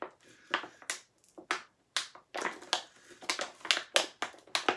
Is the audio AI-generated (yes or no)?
no